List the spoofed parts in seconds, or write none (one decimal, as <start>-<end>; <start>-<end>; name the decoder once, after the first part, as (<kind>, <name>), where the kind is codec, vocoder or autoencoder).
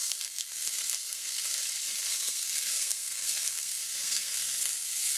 0.0-1.6 (codec, SNAC); 2.1-5.2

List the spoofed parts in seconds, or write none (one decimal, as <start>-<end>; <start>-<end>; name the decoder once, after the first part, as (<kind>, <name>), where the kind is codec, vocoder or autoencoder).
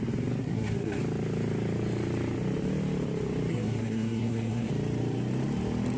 0.4-1.0 (codec, SNAC); 3.5-4.7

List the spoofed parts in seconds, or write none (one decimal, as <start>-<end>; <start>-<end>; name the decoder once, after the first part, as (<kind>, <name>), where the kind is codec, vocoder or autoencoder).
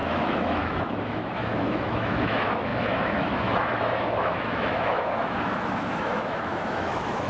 0.0-7.3 (autoencoder, DAC-VAE)